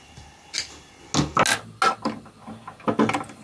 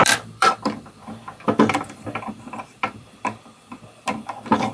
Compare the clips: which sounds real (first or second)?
first